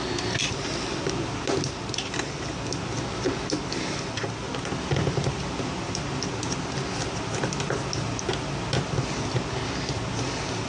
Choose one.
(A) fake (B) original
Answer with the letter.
B